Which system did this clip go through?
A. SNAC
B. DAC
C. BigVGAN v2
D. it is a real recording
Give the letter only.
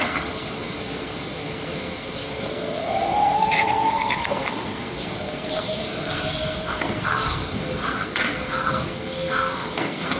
A